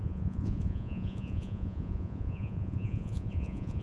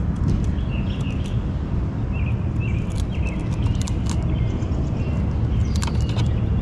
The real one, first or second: second